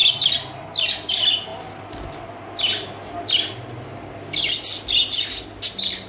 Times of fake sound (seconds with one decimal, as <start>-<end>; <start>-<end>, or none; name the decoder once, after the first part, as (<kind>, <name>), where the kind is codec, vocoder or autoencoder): none